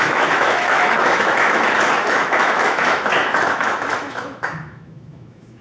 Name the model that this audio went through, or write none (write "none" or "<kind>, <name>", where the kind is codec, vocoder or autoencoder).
autoencoder, DAC-VAE